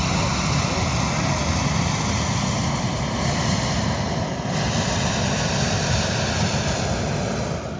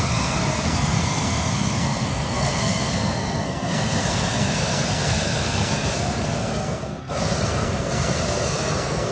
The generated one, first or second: second